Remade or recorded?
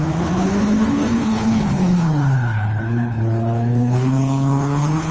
remade